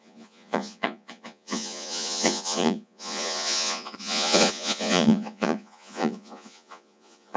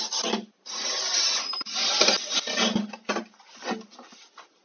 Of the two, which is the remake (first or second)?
first